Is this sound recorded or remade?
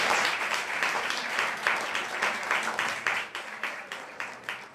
remade